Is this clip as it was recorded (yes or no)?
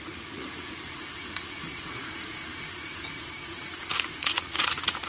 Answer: no